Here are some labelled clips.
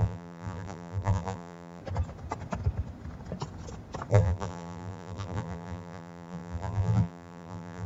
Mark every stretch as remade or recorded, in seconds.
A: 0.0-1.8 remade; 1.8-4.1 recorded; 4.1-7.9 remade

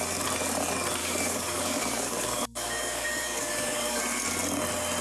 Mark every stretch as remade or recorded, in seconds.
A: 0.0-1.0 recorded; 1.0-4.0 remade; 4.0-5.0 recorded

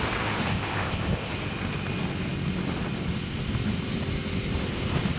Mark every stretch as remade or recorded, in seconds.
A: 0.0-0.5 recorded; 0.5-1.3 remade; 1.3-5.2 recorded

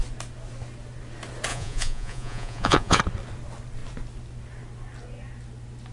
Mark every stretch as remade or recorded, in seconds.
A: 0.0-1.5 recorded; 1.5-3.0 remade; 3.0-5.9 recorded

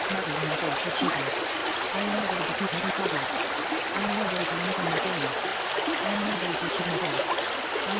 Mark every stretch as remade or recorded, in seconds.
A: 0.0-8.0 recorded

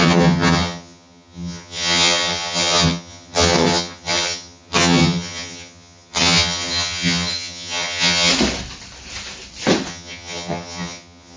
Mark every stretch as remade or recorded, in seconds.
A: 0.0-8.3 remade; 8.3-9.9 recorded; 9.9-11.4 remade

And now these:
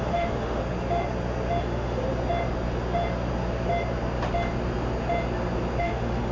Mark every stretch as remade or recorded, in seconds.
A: 0.0-0.6 remade; 0.6-1.6 recorded; 1.6-2.0 remade; 2.0-5.8 recorded; 5.8-6.3 remade